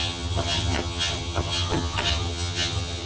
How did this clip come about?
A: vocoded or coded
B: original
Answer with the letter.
A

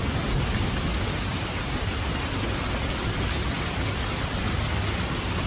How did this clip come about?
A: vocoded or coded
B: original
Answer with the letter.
B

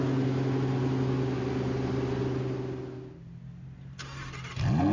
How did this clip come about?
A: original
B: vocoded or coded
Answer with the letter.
A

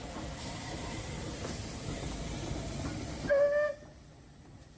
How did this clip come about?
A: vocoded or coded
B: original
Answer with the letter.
B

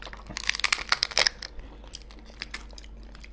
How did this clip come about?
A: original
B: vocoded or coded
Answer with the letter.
A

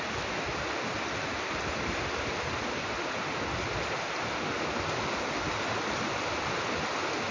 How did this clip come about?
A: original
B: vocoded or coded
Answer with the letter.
A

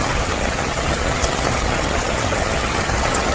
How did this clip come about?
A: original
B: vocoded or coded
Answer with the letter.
B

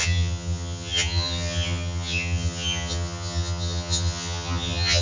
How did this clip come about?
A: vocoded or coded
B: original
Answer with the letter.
A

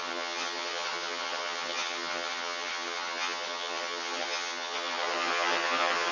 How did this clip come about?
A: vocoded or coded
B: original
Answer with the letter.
A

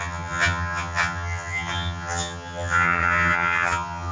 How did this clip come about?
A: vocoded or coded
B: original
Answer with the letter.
A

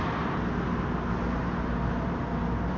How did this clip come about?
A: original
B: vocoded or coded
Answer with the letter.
A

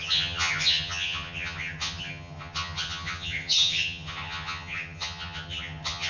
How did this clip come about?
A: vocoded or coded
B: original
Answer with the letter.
A